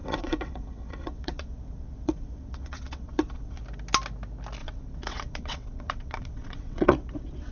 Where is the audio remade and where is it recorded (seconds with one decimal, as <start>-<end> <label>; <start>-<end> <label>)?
0.0-3.6 remade; 3.6-4.6 recorded; 4.6-7.5 remade